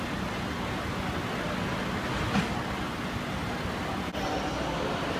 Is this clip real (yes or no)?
yes